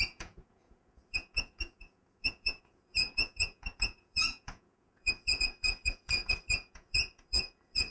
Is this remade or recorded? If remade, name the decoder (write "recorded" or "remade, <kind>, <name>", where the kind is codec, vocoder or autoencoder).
remade, vocoder, Vocos